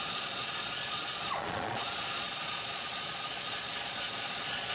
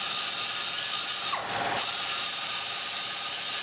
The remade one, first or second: first